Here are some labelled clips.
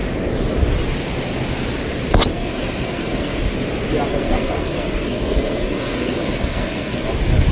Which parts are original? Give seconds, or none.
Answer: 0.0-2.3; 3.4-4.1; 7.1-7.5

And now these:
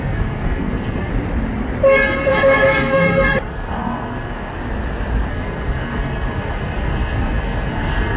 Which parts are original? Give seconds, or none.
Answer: 1.1-2.3; 4.5-5.3

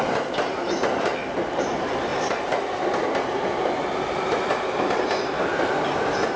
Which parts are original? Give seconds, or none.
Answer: 0.0-6.4

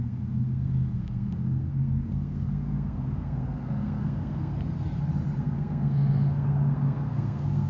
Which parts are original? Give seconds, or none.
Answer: 4.5-5.4

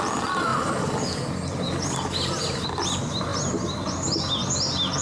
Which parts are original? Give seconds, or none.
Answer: 0.0-5.0

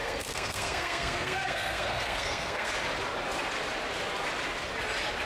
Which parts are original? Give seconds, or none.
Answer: 2.7-5.3

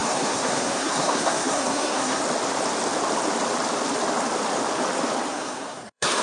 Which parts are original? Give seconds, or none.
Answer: 2.2-5.3

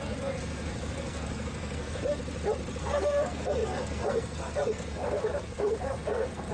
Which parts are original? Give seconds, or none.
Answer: 2.2-2.8